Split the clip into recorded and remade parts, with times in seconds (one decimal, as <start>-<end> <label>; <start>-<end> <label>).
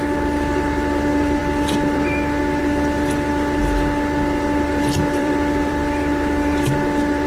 0.0-1.4 remade; 1.4-2.6 recorded; 2.6-3.6 remade; 3.6-4.8 recorded; 4.8-7.3 remade